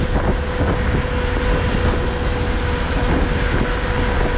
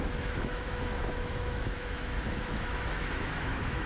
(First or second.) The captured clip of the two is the first